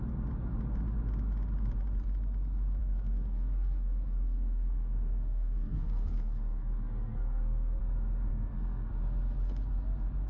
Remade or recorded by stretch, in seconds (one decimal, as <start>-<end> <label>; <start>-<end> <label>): 0.0-2.8 recorded; 2.8-7.8 remade; 7.8-8.3 recorded; 8.3-8.9 remade; 8.9-10.3 recorded